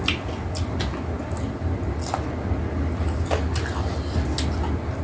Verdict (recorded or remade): recorded